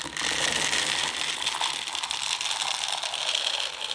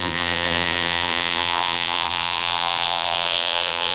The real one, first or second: first